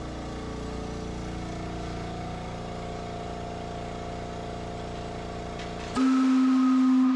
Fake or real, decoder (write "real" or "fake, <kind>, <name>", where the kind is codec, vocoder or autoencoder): real